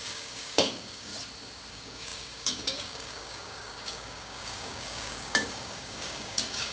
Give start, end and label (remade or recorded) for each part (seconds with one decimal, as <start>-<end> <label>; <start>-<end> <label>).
0.0-1.1 remade; 1.1-1.7 recorded; 1.7-6.7 remade